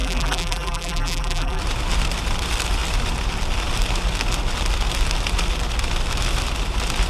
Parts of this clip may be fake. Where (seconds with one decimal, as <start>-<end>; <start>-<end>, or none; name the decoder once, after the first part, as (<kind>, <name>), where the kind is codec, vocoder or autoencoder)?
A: 0.0-1.6 (vocoder, BigVGAN v2)